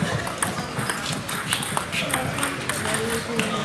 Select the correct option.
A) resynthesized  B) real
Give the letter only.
B